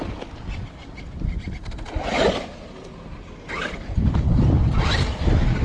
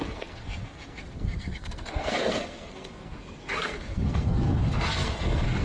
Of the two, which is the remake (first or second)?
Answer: second